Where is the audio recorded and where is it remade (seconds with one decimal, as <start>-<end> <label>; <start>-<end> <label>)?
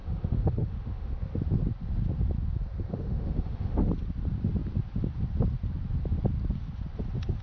0.0-1.1 remade; 1.1-2.9 recorded; 2.9-3.9 remade; 3.9-7.4 recorded